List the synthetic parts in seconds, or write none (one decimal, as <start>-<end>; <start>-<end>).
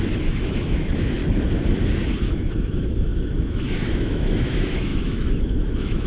0.0-1.2; 2.2-6.1